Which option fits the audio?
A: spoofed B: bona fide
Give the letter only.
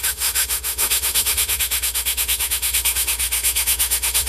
A